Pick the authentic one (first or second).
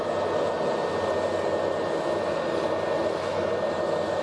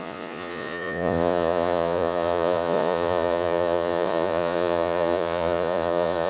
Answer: first